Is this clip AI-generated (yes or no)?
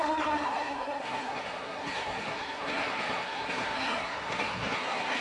yes